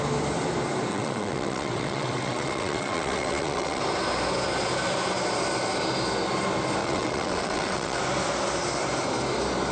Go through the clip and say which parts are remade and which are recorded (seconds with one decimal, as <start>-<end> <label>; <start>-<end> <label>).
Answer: 0.0-0.9 recorded; 0.9-3.8 remade; 3.8-6.8 recorded; 6.8-8.0 remade; 8.0-9.7 recorded